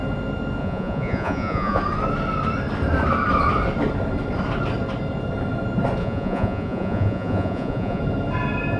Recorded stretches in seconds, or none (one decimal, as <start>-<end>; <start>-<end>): 0.0-0.6; 1.8-6.0; 8.0-8.8